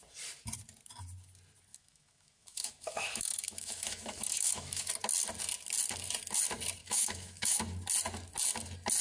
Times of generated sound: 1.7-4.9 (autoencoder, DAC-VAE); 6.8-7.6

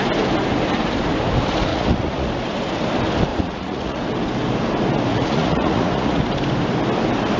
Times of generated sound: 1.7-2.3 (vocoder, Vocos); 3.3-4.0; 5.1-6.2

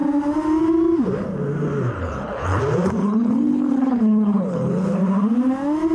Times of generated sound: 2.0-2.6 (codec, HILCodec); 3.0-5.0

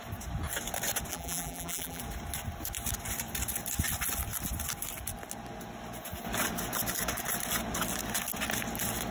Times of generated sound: 1.1-2.0 (vocoder, BigVGAN v2)

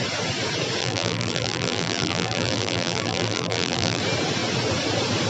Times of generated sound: 0.8-4.0 (vocoder, BigVGAN v2)

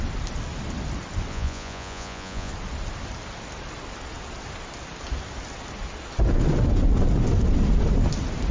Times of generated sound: 1.3-2.5 (vocoder, Vocos)

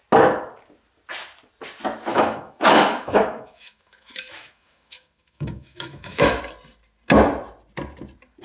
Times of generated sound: 2.1-6.4 (autoencoder, DAC-VAE)

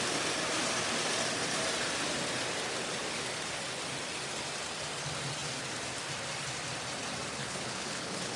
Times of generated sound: 7.4-8.4 (codec, HILCodec)